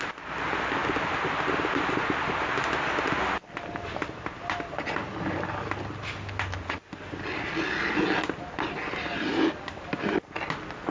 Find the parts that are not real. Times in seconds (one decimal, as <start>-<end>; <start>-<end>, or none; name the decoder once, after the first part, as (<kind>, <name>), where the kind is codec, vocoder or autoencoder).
none